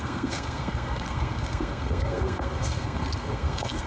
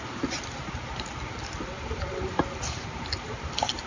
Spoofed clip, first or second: first